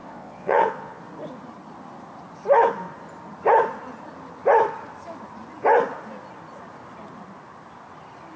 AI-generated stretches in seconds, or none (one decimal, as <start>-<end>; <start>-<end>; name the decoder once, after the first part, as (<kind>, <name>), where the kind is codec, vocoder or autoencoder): 0.0-1.0 (vocoder, Vocos)